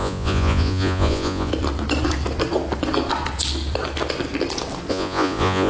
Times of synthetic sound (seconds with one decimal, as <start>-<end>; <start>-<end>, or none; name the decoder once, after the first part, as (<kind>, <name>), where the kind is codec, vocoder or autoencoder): 0.0-1.5 (vocoder, Vocos); 4.9-5.7